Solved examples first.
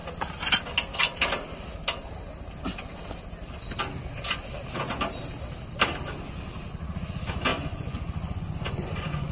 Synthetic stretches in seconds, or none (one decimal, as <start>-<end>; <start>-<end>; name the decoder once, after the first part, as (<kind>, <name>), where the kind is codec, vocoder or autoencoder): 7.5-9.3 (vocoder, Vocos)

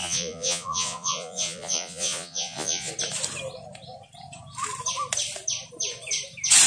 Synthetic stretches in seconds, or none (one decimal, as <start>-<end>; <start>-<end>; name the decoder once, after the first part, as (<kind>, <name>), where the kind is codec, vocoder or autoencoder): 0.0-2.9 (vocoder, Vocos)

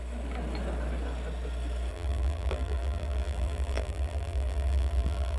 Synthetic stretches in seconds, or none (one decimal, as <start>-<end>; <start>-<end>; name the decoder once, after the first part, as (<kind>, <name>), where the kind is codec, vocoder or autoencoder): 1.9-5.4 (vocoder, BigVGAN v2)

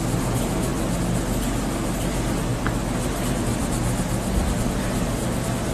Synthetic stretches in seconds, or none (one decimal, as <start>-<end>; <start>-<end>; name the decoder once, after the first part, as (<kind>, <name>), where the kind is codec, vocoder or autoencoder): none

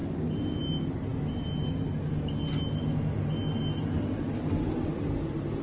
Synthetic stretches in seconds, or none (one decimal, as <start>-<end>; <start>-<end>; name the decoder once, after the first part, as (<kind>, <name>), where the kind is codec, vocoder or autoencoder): none

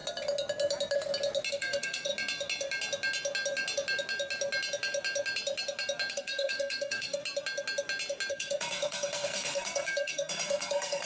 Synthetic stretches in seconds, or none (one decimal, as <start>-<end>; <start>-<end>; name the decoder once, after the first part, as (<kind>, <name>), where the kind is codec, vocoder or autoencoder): 1.5-2.1 (codec, SNAC); 6.1-7.2; 8.3-11.1